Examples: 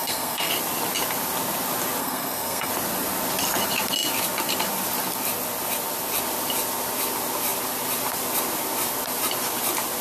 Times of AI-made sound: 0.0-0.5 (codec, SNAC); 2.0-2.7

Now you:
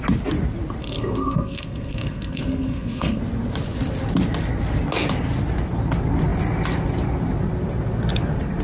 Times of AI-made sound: 0.8-3.2 (codec, SNAC)

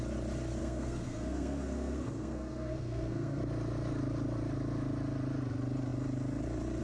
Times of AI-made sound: 0.6-3.4 (codec, SNAC)

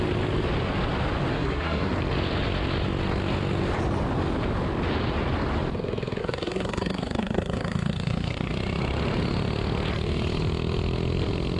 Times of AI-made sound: 1.3-1.9 (codec, SNAC); 6.2-8.5

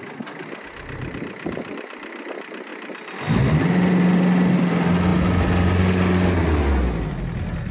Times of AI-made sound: none

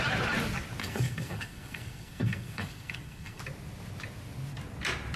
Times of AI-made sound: 0.8-3.4 (codec, SNAC)

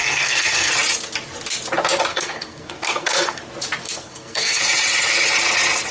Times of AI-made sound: 0.0-0.7 (codec, SNAC); 2.1-3.4; 3.8-4.6

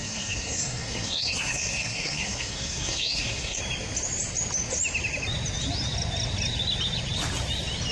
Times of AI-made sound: 0.0-3.6 (codec, SNAC)